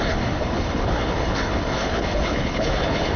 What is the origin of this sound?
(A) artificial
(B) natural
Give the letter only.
A